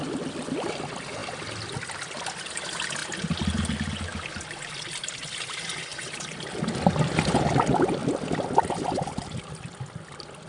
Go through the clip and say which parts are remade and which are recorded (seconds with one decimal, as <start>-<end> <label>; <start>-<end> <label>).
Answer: 0.0-5.9 recorded; 5.9-6.8 remade; 6.8-10.5 recorded